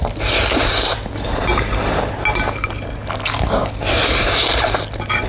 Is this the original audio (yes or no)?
yes